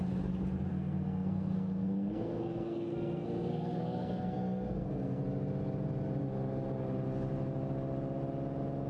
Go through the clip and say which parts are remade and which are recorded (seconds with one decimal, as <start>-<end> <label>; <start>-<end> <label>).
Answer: 0.0-0.7 recorded; 0.7-5.2 remade; 5.2-8.9 recorded